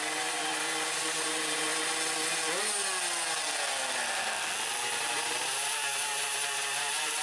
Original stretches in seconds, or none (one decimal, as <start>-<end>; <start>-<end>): 1.7-5.1